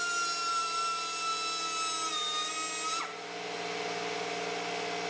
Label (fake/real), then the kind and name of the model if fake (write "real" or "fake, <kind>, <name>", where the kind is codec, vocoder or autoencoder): real